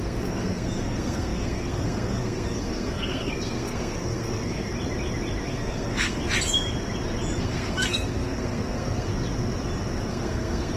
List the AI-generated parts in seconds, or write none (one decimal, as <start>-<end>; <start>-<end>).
0.0-4.7; 5.5-6.2; 7.4-9.1; 10.1-10.8